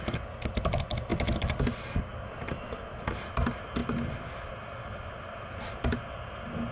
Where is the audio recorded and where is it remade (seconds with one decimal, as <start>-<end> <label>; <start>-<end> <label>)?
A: 0.0-1.1 recorded; 1.1-1.6 remade; 1.6-2.1 recorded; 2.1-3.2 remade; 3.2-6.7 recorded